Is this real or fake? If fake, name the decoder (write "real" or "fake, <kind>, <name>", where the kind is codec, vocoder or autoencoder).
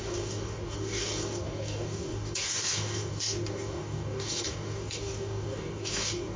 fake, codec, DAC